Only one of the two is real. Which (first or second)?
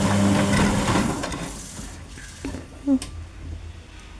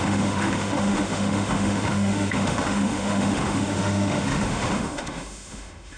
first